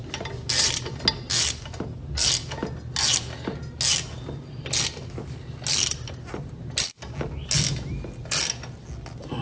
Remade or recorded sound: recorded